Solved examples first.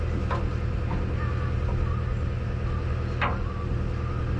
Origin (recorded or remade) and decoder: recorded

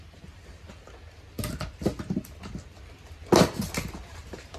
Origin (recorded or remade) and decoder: recorded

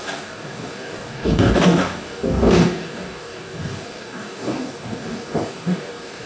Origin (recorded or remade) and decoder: remade, codec, DAC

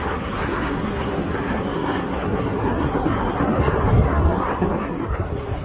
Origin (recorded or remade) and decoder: remade, codec, SNAC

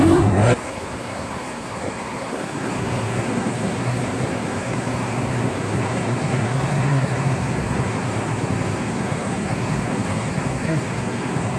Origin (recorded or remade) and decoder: remade, codec, SNAC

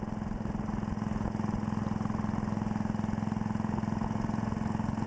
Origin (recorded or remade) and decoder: recorded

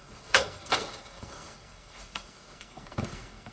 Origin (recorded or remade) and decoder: remade, codec, SNAC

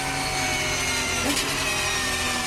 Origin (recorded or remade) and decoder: recorded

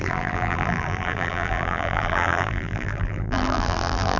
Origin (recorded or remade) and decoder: remade, vocoder, BigVGAN v2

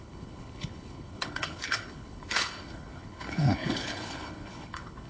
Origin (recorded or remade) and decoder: remade, codec, HILCodec